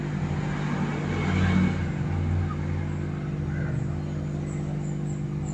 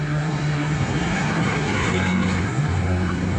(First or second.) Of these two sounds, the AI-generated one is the second